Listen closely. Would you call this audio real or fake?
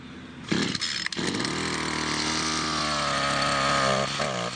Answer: real